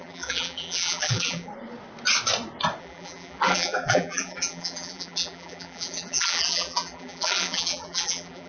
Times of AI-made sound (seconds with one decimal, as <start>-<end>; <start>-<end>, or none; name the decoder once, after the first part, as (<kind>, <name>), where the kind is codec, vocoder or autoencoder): 0.0-1.5 (vocoder, BigVGAN v2); 2.8-8.5